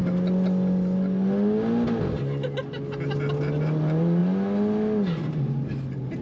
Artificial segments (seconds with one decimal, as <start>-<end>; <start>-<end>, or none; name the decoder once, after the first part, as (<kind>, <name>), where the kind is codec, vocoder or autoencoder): none